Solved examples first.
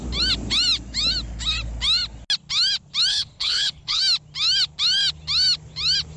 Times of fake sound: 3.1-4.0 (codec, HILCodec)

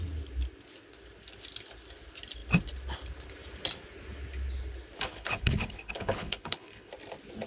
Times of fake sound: 5.1-6.9 (codec, HILCodec)

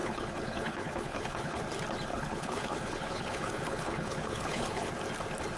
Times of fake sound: 0.0-1.6 (codec, HILCodec); 2.1-4.9

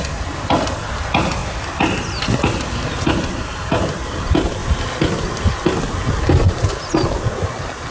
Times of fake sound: none

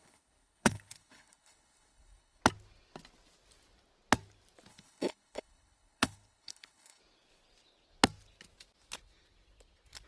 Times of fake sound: 0.0-2.4 (codec, HILCodec); 4.7-7.0